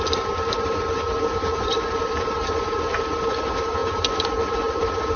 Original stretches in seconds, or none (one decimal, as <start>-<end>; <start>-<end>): 0.0-1.5; 2.6-3.8; 4.8-5.2